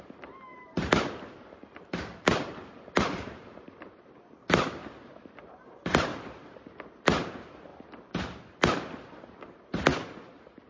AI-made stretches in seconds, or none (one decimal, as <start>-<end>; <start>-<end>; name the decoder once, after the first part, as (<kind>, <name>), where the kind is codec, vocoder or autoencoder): 0.0-4.8 (vocoder, BigVGAN v2); 5.4-7.7; 9.3-9.9